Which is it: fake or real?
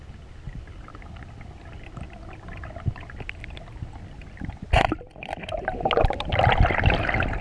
real